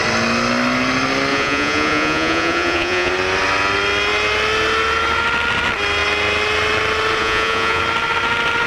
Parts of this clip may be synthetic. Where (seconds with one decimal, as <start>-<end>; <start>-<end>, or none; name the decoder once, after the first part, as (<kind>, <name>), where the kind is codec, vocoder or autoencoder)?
1.3-3.1 (vocoder, Vocos); 7.2-7.8